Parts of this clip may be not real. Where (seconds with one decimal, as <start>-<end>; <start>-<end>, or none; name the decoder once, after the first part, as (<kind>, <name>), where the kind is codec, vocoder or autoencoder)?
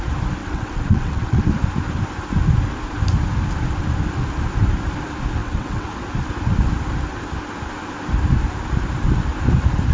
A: 0.4-1.4 (vocoder, WaveNeXt); 5.4-5.9